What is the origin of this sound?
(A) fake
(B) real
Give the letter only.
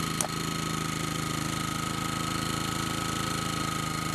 B